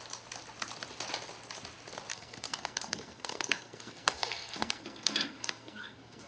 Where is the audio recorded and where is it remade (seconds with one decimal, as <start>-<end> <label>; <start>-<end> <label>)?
0.0-2.1 recorded; 2.1-6.3 remade